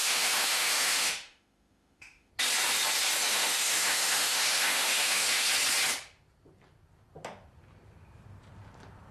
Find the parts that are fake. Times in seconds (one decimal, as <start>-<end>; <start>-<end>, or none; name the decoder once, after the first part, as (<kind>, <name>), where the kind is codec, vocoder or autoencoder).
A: 0.0-2.3 (autoencoder, DAC-VAE); 3.3-5.5